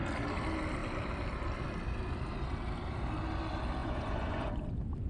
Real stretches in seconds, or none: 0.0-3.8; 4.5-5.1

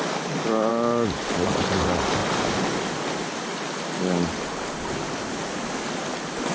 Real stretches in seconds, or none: 0.0-0.7; 1.7-2.2; 5.3-6.5

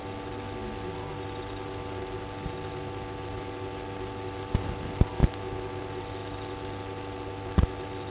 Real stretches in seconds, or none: 0.0-8.1